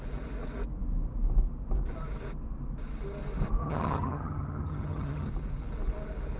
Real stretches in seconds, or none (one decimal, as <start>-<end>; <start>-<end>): 0.0-3.6; 5.3-6.4